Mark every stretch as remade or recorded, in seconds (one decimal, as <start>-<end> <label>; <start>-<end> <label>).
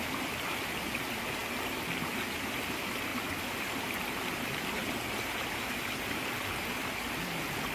0.0-7.7 recorded